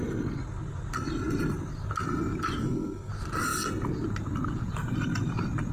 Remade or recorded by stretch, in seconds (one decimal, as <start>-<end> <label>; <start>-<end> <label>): 0.0-2.6 recorded; 2.6-3.1 remade; 3.1-5.7 recorded